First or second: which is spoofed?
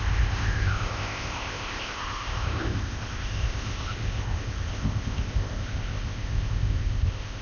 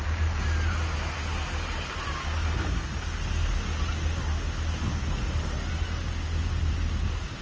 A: first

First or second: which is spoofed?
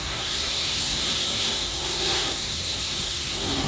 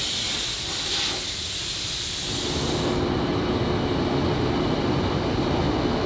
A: first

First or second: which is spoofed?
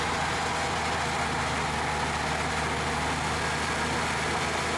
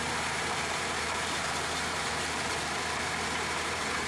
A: second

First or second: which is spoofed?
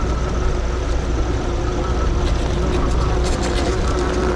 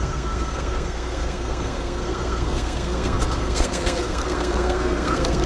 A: second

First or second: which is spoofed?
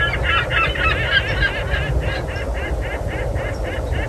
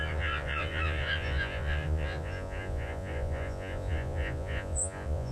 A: second